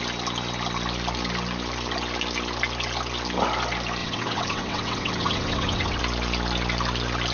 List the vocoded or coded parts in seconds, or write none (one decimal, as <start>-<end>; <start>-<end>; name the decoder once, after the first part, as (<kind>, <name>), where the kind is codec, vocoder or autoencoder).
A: 4.0-6.0 (vocoder, WaveNeXt)